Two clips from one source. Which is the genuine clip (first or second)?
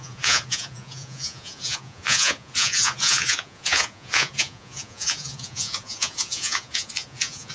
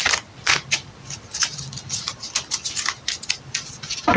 second